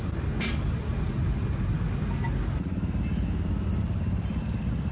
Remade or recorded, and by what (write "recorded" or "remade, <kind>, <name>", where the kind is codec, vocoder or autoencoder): recorded